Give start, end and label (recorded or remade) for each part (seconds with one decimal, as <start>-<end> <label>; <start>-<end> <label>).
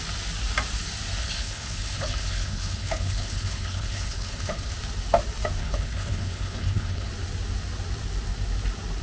0.0-1.2 recorded; 1.2-4.7 remade; 4.7-5.6 recorded; 5.6-7.1 remade; 7.1-9.0 recorded